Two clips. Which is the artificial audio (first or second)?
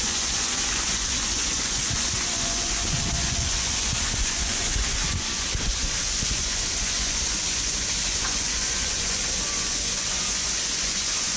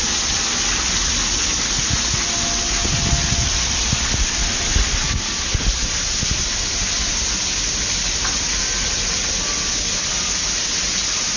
first